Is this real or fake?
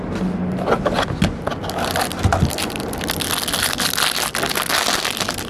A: real